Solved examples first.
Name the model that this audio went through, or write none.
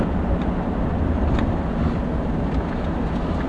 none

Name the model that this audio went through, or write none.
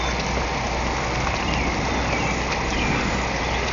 none